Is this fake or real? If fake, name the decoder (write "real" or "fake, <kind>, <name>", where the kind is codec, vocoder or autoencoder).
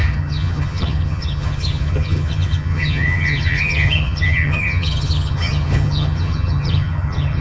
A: fake, vocoder, HiFi-GAN